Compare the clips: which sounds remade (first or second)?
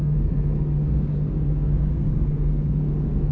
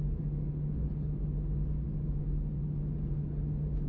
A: first